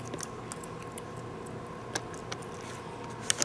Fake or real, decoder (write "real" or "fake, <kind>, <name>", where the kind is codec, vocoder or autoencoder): real